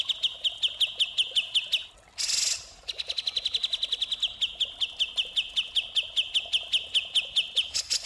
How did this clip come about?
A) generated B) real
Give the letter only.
B